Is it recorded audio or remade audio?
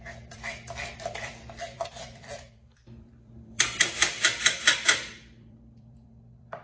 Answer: remade